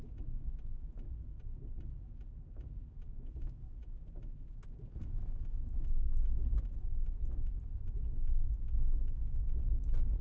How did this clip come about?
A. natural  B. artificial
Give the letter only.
A